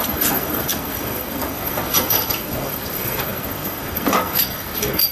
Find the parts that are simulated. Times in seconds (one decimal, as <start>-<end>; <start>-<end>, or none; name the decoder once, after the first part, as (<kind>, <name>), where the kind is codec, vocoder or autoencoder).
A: 0.0-5.1 (codec, SNAC)